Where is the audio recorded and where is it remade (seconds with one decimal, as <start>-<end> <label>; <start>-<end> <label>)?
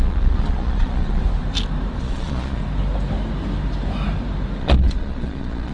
0.0-1.2 remade; 1.2-2.0 recorded; 2.0-2.6 remade; 2.6-4.6 recorded; 4.6-5.7 remade